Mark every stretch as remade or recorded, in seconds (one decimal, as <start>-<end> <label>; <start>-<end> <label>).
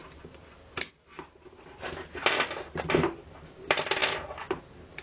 0.0-5.0 recorded